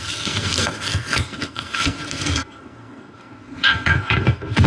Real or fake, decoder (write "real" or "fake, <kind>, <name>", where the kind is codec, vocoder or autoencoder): fake, codec, SNAC